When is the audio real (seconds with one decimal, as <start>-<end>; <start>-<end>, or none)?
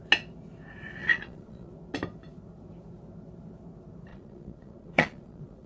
0.0-1.0; 1.7-4.1